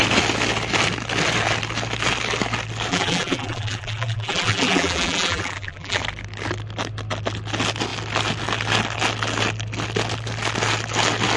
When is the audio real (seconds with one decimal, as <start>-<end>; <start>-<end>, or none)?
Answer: 0.0-2.9; 6.0-11.4